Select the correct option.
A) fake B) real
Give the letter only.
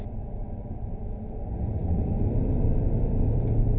A